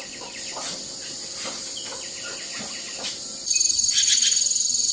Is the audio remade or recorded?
recorded